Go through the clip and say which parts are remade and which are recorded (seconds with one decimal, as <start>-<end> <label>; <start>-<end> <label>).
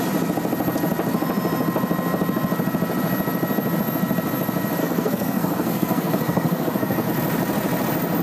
0.0-4.8 recorded; 4.8-7.1 remade; 7.1-8.2 recorded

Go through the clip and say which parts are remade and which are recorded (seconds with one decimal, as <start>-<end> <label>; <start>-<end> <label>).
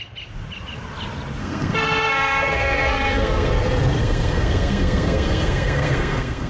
0.0-1.4 recorded; 1.4-3.5 remade; 3.5-4.0 recorded; 4.0-6.5 remade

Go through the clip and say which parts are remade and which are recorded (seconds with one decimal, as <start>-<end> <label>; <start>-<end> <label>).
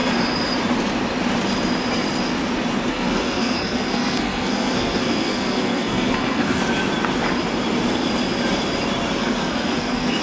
0.0-2.9 recorded; 2.9-6.6 remade; 6.6-9.2 recorded; 9.2-10.2 remade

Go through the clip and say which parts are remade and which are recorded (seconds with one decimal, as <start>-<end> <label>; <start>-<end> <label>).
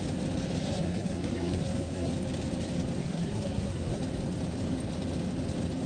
0.0-0.6 recorded; 0.6-2.1 remade; 2.1-3.0 recorded; 3.0-4.0 remade; 4.0-5.9 recorded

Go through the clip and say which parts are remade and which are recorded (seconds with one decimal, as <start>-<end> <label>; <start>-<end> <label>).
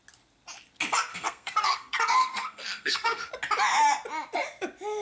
0.0-1.1 recorded; 1.1-3.3 remade; 3.3-5.0 recorded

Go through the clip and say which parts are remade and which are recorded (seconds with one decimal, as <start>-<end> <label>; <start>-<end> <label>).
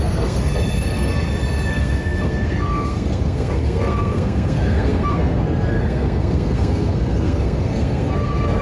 0.0-1.1 remade; 1.1-1.7 recorded; 1.7-8.6 remade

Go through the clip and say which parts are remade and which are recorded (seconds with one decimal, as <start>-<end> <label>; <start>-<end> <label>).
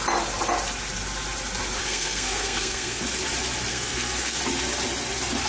0.0-1.8 recorded; 1.8-3.0 remade; 3.0-3.7 recorded; 3.7-4.4 remade; 4.4-5.5 recorded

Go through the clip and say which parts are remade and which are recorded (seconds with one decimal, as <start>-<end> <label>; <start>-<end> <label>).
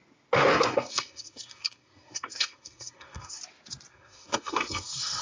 0.0-0.5 recorded; 0.5-3.4 remade; 3.4-3.9 recorded; 3.9-5.2 remade